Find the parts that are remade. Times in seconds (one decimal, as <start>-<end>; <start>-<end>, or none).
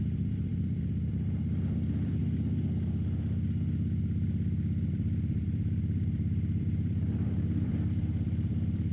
0.0-2.2; 4.9-8.9